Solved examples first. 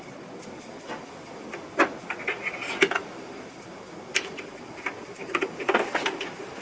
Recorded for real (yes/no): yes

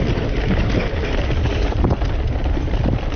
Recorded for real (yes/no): yes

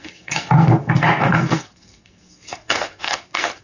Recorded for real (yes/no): no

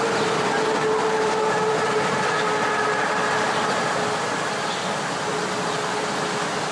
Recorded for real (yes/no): yes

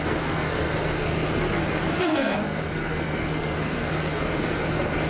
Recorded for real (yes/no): no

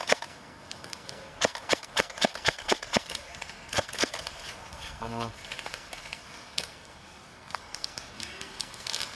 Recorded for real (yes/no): no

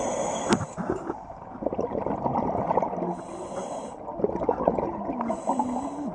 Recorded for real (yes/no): yes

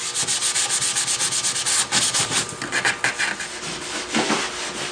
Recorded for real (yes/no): yes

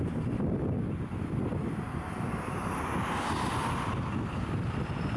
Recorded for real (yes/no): yes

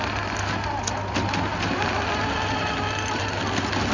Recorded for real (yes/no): yes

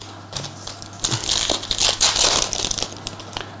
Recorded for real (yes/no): yes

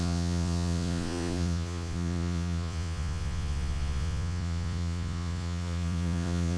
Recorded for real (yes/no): no